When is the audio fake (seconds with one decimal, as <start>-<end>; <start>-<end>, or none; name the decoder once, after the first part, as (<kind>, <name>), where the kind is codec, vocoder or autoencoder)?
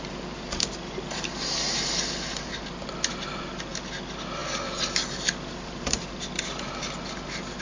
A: none